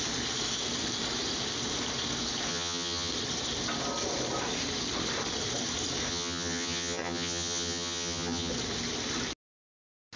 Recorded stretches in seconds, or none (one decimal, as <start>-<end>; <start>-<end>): 0.0-2.5; 3.1-6.1; 8.5-10.2

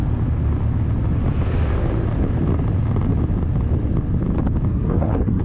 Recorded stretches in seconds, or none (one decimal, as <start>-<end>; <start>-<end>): 0.0-4.7

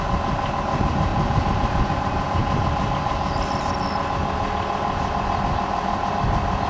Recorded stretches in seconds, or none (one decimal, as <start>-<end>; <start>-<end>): 0.0-6.7

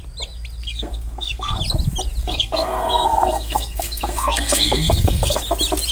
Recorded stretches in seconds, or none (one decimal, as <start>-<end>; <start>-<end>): 0.0-0.6; 1.6-2.2; 5.4-5.9

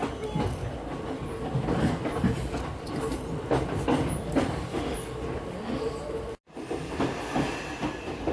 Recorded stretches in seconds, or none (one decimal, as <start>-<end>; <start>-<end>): 0.0-8.3